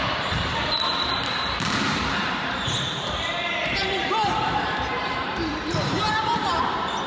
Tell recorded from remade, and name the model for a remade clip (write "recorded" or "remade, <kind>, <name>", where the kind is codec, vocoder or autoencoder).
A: remade, vocoder, BigVGAN v2